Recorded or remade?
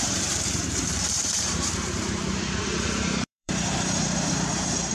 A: remade